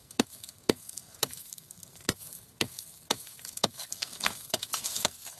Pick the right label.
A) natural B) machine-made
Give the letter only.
B